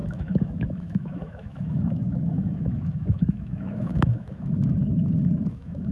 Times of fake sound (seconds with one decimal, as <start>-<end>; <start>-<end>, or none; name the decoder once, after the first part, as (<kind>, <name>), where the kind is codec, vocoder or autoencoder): 0.0-4.6 (autoencoder, DAC-VAE); 5.5-5.9

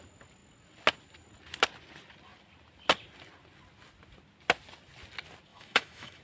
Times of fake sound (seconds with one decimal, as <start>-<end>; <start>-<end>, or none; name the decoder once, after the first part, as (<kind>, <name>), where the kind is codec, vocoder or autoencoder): 5.5-6.2 (autoencoder, DAC-VAE)

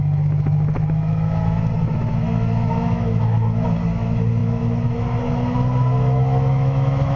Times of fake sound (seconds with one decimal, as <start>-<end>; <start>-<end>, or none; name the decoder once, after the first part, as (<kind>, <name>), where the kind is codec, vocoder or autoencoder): 0.0-7.2 (autoencoder, DAC-VAE)

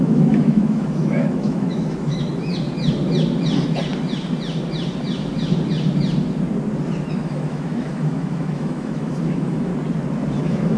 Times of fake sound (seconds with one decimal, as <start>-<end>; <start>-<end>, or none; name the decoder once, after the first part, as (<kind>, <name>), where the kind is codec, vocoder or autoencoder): 0.0-2.3 (autoencoder, DAC-VAE); 7.1-9.7; 10.4-10.8

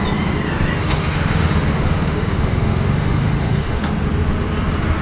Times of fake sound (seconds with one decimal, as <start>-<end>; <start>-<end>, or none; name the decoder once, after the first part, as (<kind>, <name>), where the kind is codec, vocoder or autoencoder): 0.8-3.8 (autoencoder, DAC-VAE)

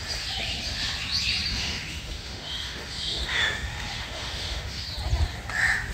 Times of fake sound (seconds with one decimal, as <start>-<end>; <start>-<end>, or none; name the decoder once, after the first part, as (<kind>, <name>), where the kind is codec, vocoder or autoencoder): 1.5-4.8 (autoencoder, DAC-VAE)

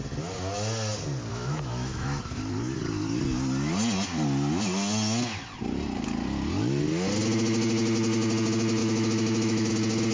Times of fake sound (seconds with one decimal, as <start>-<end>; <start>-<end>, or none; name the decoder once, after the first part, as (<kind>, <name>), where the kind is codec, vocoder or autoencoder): 1.3-2.2 (autoencoder, DAC-VAE); 8.8-9.7

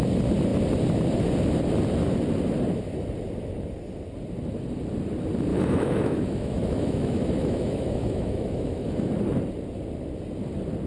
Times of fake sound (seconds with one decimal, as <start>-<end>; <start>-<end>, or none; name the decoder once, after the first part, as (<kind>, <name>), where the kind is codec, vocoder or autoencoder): 5.5-9.1 (autoencoder, DAC-VAE)